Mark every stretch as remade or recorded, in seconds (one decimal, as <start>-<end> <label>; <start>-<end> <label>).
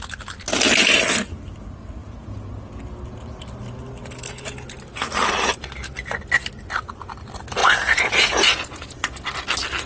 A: 0.0-2.0 recorded; 2.0-2.8 remade; 2.8-4.0 recorded; 4.0-4.6 remade; 4.6-7.6 recorded; 7.6-9.3 remade; 9.3-9.9 recorded